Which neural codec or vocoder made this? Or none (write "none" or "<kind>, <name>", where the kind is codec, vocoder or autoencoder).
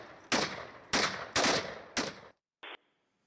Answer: none